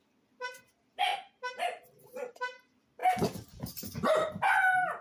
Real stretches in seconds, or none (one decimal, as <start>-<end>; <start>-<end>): 0.0-5.0